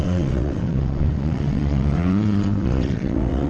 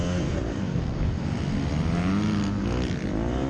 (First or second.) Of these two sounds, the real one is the second